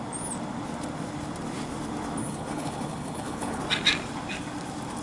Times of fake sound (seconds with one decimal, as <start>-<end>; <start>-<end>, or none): 2.2-3.6